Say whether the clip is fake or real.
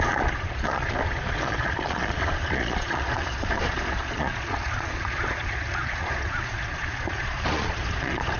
fake